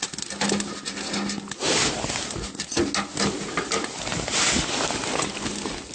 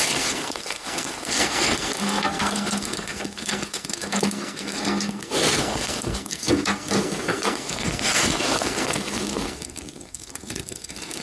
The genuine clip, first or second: first